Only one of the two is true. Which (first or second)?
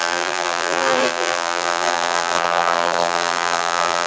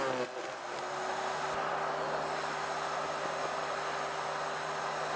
second